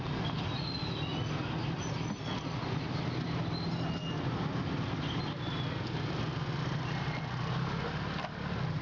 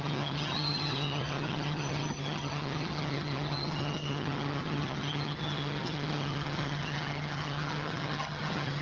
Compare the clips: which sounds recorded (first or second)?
first